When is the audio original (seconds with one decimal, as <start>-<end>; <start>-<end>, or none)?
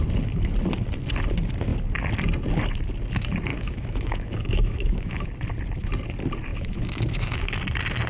0.0-3.5; 5.3-6.5; 7.6-8.1